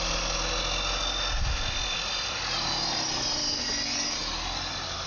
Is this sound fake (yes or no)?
no